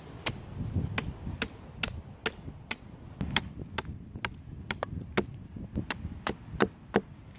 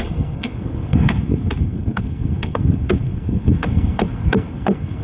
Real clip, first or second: first